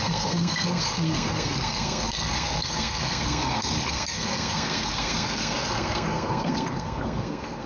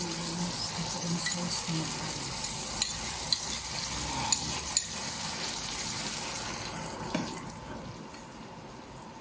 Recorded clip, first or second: second